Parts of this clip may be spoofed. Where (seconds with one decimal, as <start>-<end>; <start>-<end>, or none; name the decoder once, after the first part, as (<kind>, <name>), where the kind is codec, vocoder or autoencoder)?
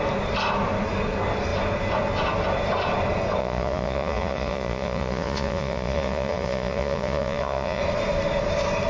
3.4-7.8 (vocoder, Vocos)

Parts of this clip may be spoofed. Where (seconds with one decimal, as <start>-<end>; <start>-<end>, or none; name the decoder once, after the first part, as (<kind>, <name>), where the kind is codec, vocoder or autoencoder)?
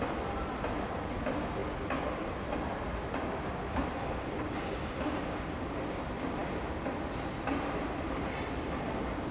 none